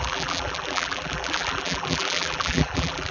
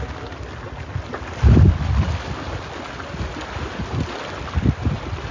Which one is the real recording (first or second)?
second